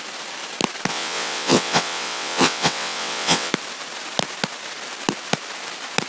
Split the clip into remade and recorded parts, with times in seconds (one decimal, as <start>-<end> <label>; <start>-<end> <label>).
0.0-0.9 recorded; 0.9-3.5 remade; 3.5-6.1 recorded